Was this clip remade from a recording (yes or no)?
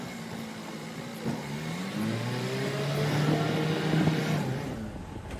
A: no